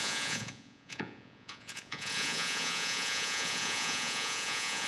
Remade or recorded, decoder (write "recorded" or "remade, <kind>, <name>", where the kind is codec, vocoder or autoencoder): remade, vocoder, Vocos